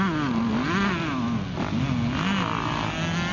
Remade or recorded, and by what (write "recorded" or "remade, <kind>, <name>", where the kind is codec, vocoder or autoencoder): recorded